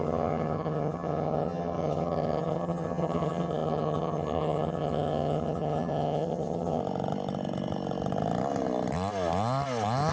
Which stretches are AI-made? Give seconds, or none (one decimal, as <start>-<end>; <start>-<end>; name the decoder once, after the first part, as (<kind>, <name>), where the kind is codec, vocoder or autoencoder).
0.0-6.8 (vocoder, HiFi-GAN)

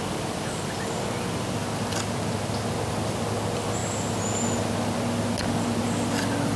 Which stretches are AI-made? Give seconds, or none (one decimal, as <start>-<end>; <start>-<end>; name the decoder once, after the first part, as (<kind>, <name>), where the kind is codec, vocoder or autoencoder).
none

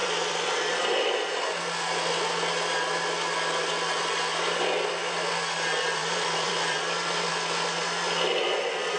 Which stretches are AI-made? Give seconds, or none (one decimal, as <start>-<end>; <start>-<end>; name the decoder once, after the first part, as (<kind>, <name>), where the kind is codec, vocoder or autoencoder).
0.0-0.7 (vocoder, BigVGAN v2); 6.0-7.3

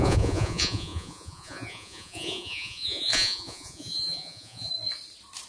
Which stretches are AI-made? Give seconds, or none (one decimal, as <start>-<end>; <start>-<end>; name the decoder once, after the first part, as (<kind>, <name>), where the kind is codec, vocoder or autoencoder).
0.0-4.7 (vocoder, Vocos)

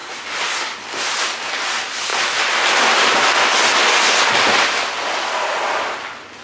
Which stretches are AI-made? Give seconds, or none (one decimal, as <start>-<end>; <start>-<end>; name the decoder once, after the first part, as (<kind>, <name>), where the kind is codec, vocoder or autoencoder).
none

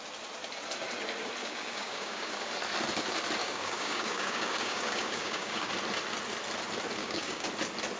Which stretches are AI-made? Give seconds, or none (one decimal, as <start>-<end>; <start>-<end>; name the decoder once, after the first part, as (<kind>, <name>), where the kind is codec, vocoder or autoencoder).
1.4-2.3 (codec, DAC); 3.4-5.7; 7.0-7.5

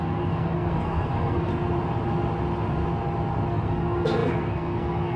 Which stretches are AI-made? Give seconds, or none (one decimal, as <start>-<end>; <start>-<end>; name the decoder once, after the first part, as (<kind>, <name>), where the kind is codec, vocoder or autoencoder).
0.0-1.5 (codec, SNAC); 3.5-5.2